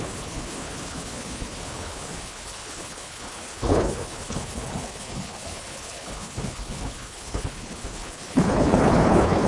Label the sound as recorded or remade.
remade